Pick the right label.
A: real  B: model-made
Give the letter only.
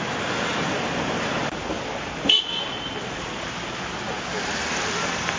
A